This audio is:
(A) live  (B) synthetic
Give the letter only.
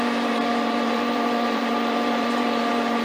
B